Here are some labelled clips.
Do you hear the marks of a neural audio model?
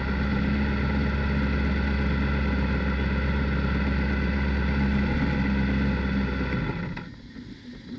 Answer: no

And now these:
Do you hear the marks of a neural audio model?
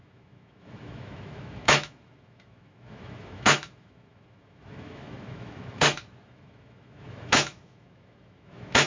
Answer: yes